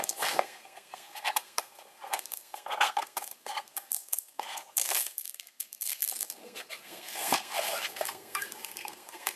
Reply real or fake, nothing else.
fake